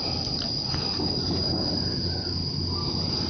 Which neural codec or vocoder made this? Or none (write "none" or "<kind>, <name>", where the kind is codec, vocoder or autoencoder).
none